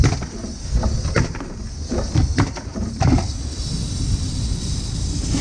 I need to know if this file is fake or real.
real